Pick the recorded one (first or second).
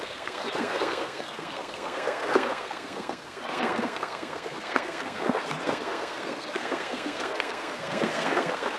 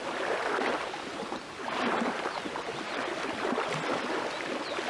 second